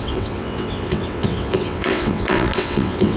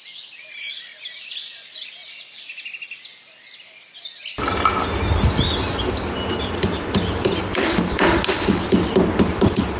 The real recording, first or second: second